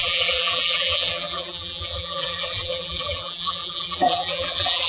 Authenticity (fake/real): fake